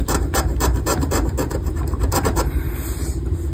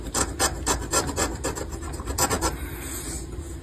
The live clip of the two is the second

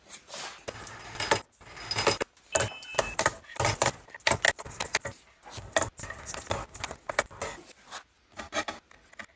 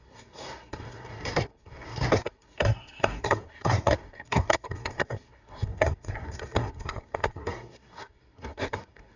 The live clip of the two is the first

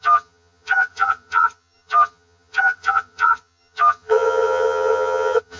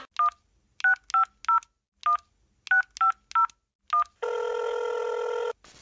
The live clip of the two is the second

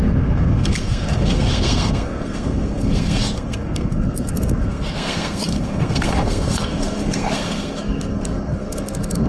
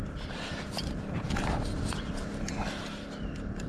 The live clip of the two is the second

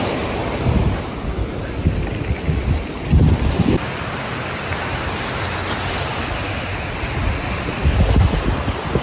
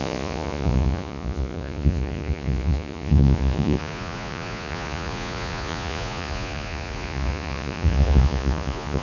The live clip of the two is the first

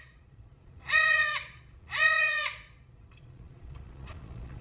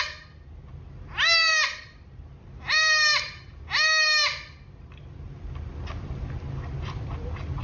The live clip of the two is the second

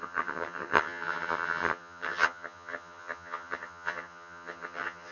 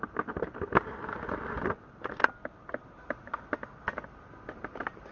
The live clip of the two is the second